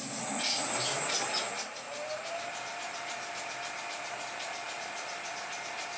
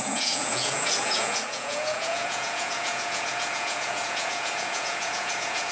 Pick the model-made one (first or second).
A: second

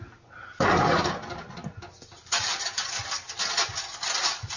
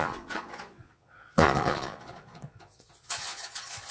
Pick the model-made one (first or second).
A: second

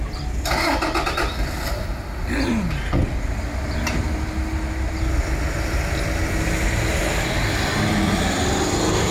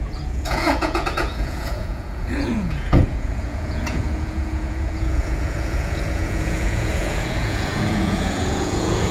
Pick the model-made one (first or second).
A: second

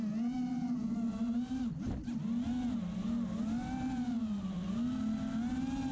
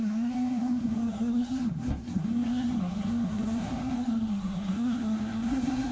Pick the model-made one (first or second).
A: second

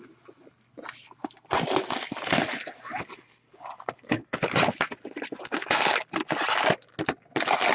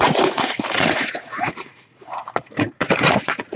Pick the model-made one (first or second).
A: second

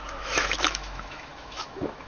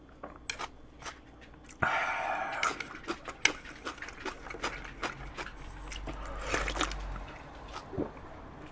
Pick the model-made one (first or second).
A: first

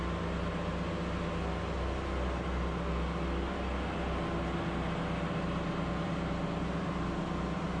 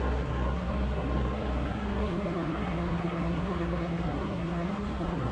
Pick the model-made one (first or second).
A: second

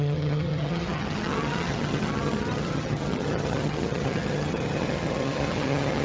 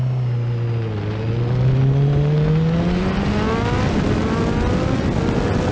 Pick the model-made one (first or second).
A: first